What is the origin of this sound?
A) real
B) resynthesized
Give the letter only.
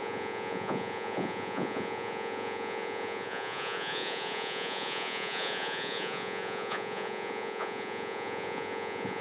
B